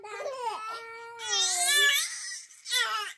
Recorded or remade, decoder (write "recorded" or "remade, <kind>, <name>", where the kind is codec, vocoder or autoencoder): recorded